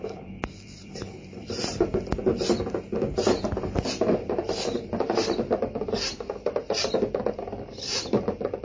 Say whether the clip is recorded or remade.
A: remade